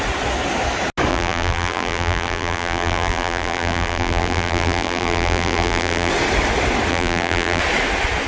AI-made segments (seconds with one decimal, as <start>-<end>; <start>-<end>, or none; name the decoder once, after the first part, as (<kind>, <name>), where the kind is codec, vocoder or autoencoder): 1.1-6.1 (vocoder, BigVGAN v2); 6.9-7.6